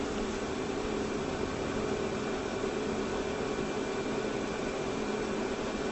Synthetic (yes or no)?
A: no